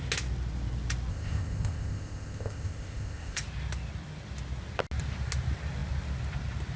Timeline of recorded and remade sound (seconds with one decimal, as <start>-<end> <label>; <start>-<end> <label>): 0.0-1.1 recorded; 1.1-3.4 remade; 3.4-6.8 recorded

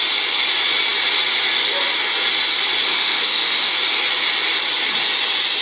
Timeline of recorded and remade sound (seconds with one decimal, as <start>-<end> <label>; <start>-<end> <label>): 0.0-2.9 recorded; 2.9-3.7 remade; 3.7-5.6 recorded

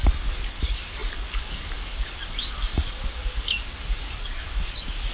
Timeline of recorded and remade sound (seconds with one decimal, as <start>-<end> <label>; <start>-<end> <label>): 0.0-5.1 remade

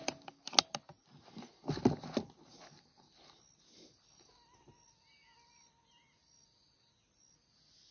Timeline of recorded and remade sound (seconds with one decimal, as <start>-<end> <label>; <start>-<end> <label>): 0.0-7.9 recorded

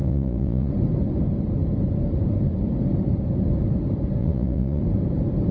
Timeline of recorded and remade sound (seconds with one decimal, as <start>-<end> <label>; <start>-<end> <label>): 0.0-0.7 remade; 0.7-4.2 recorded; 4.2-4.8 remade; 4.8-5.5 recorded

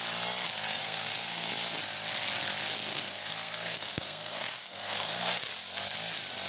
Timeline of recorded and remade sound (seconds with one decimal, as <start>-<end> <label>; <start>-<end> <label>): 0.0-0.8 recorded; 0.8-1.5 remade; 1.5-2.9 recorded; 2.9-5.4 remade; 5.4-6.5 recorded